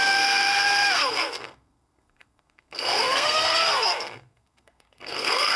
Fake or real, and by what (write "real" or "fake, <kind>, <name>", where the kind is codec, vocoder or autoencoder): fake, codec, SNAC